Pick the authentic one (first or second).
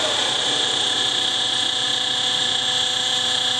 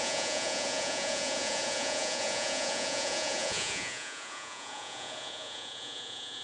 first